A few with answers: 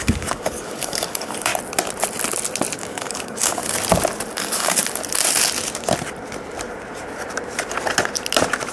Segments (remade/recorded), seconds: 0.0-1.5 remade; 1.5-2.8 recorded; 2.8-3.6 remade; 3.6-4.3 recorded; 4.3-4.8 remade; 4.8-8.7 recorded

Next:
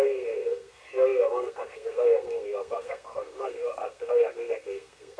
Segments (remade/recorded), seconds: 0.0-5.2 remade

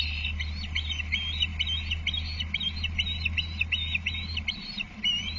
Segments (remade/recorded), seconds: 0.0-5.4 recorded

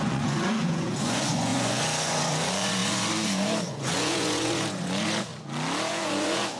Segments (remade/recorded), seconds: 0.0-5.3 remade; 5.3-5.9 recorded; 5.9-6.6 remade

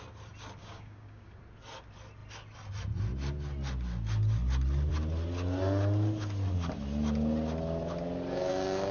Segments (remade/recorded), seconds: 0.0-0.6 recorded; 0.6-1.4 remade; 1.4-8.9 recorded

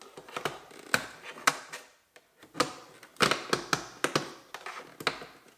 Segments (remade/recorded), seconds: 0.0-5.6 recorded

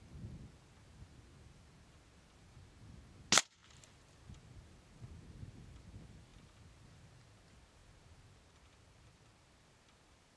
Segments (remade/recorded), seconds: 0.0-10.4 recorded

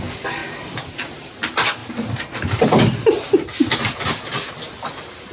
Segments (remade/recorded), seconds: 0.0-0.4 recorded; 0.4-0.9 remade; 0.9-5.3 recorded